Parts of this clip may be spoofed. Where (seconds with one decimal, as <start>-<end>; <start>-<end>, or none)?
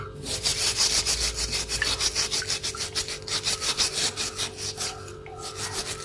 none